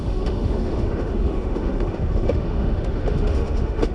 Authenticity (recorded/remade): remade